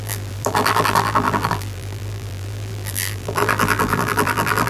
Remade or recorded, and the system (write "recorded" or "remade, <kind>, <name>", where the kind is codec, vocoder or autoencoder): remade, vocoder, BigVGAN v2